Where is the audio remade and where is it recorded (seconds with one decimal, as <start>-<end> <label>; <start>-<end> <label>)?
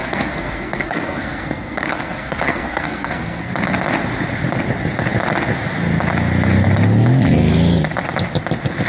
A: 0.0-3.5 remade; 3.5-8.9 recorded